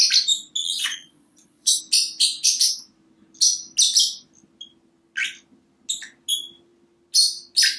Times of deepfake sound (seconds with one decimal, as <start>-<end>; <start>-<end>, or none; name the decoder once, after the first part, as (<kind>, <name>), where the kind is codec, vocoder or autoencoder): 0.6-1.8 (vocoder, Vocos)